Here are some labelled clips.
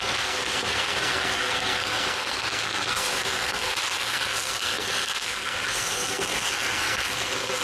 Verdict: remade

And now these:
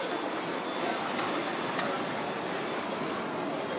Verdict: recorded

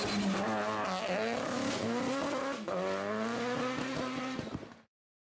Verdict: recorded